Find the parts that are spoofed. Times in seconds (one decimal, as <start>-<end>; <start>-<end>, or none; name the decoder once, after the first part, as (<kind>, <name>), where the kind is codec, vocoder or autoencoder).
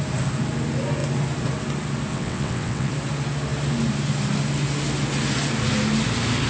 2.1-2.9 (vocoder, WaveNeXt)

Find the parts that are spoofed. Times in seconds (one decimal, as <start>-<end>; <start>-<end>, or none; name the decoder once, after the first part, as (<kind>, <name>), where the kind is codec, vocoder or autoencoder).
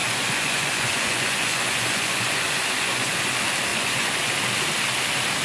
0.0-3.2 (vocoder, Vocos); 3.7-4.3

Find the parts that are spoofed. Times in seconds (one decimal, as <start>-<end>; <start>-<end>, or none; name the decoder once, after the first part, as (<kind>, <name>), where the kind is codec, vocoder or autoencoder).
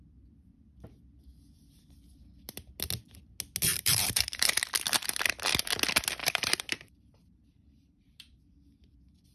3.7-4.6 (vocoder, BigVGAN v2); 6.2-8.4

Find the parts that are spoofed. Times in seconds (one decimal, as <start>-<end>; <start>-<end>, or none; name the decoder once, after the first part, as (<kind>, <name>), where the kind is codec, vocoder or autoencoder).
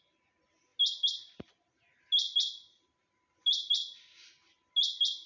none